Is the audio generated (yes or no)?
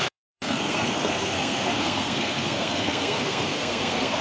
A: yes